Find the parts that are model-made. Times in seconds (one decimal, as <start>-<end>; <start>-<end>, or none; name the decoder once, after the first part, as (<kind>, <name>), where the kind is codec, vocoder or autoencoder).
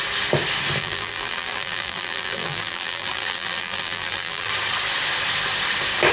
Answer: 0.8-4.5 (vocoder, BigVGAN v2)